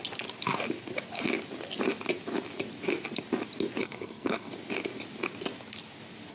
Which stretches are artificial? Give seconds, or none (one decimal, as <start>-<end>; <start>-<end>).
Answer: 3.8-4.5